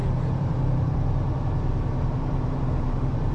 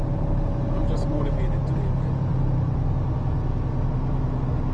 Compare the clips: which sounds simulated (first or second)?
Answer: first